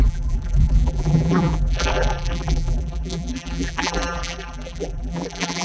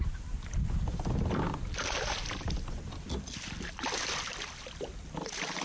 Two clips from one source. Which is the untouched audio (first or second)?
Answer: second